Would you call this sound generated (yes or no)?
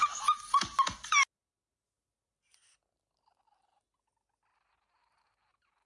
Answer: no